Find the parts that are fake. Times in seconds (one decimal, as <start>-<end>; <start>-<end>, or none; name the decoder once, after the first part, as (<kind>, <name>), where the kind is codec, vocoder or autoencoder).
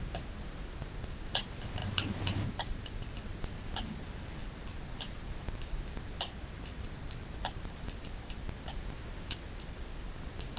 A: 1.8-2.9 (vocoder, BigVGAN v2); 4.4-8.8